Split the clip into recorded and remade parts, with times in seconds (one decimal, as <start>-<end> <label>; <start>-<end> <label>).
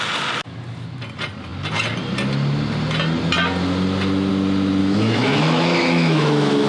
0.0-4.8 recorded; 4.8-6.7 remade